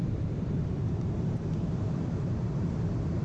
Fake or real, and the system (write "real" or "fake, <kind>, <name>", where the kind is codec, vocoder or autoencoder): fake, vocoder, BigVGAN v2